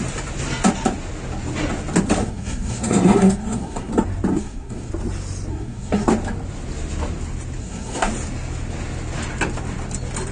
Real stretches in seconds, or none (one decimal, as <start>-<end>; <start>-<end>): 0.0-2.2; 3.9-4.3; 4.9-5.5; 6.1-7.6; 8.1-10.3